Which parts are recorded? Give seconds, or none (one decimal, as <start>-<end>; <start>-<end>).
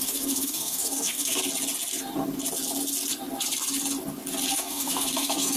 1.4-4.5